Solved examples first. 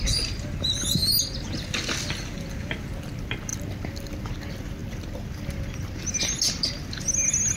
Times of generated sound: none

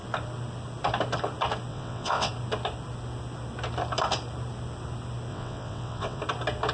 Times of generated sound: 1.7-2.3; 5.3-6.2

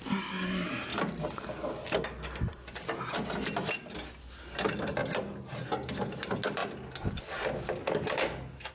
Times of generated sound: none

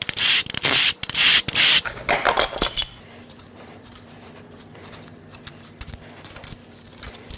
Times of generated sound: 0.0-1.2; 2.1-7.4

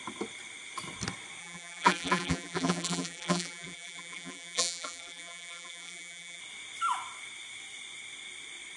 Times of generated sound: 1.4-6.4

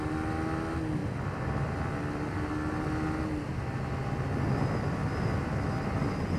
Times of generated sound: none